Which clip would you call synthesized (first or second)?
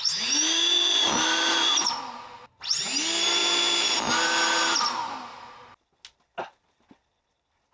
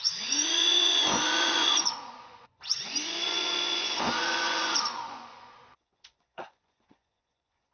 second